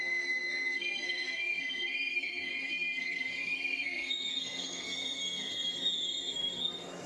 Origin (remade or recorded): remade